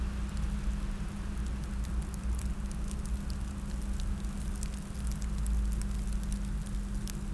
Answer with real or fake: real